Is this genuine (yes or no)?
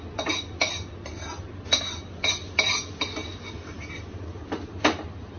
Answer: yes